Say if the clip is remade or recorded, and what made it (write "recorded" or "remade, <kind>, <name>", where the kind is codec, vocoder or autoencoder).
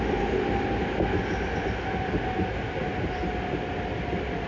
recorded